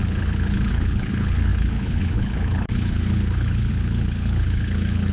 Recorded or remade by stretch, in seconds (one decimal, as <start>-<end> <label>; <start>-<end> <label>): 0.0-5.1 remade

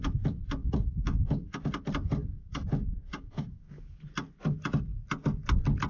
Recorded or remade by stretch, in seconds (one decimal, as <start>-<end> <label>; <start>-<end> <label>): 0.0-0.6 recorded; 0.6-1.7 remade; 1.7-2.2 recorded; 2.2-4.0 remade; 4.0-5.9 recorded

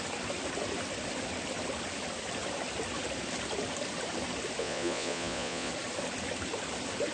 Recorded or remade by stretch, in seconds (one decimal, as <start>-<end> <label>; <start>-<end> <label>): 0.0-4.6 recorded; 4.6-5.7 remade; 5.7-7.1 recorded

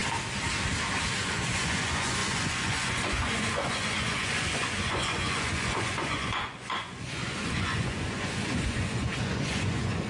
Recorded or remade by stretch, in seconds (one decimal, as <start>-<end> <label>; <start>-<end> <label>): 0.0-1.2 recorded; 1.2-10.1 remade